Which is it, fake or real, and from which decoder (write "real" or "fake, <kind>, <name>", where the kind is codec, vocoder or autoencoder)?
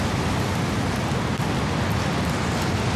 real